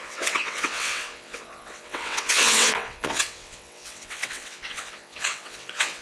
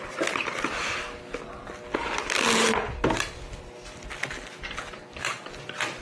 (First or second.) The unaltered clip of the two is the second